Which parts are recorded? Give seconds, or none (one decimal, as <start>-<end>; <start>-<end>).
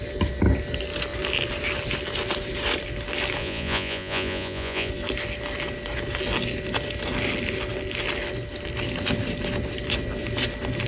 0.0-3.4; 4.9-10.9